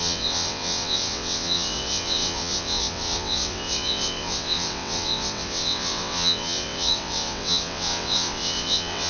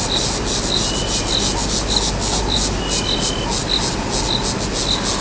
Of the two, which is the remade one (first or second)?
first